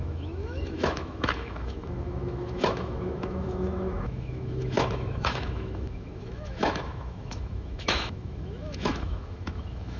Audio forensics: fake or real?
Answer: fake